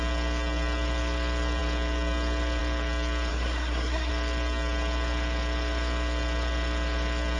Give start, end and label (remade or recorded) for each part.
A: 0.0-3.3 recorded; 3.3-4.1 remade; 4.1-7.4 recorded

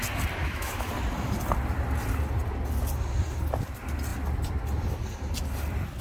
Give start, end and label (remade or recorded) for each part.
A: 0.0-0.4 recorded; 0.4-0.9 remade; 0.9-6.0 recorded

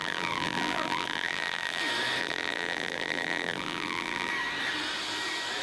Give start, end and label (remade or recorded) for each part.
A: 0.0-1.8 remade; 1.8-2.2 recorded; 2.2-4.3 remade; 4.3-5.6 recorded

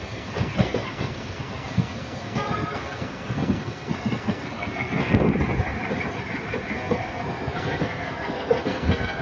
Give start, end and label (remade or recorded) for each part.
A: 0.0-5.3 remade; 5.3-6.7 recorded; 6.7-9.2 remade

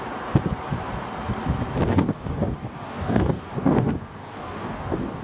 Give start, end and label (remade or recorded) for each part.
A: 0.0-1.9 recorded; 1.9-5.2 remade

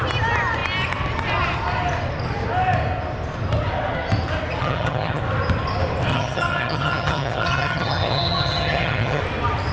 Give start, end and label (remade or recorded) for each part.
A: 0.0-4.6 recorded; 4.6-5.2 remade; 5.2-6.1 recorded; 6.1-9.2 remade; 9.2-9.7 recorded

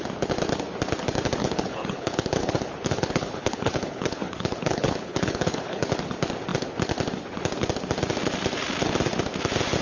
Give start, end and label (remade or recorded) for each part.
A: 0.0-1.4 recorded; 1.4-5.9 remade; 5.9-9.8 recorded

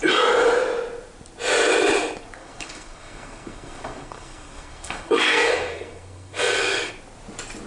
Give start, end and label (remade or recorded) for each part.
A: 0.0-2.4 recorded; 2.4-6.9 remade; 6.9-7.7 recorded